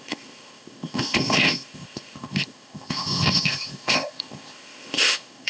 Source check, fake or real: fake